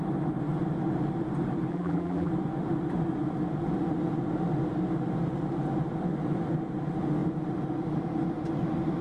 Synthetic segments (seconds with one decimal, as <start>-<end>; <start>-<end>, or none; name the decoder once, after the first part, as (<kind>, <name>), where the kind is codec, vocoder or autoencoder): 1.7-2.3 (vocoder, BigVGAN v2)